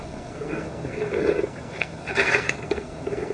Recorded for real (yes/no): no